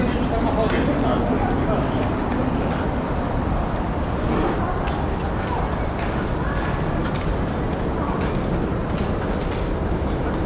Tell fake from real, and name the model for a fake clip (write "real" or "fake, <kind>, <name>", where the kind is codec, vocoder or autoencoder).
real